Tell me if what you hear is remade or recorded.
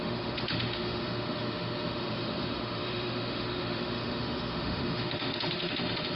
remade